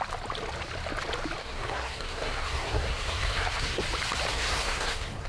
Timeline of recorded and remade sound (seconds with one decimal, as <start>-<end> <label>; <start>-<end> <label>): 0.0-1.4 recorded; 1.4-3.8 remade; 3.8-4.3 recorded; 4.3-5.3 remade